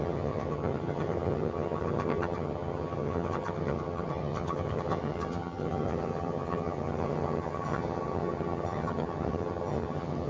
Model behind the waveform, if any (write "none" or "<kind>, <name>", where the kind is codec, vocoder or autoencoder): vocoder, HiFi-GAN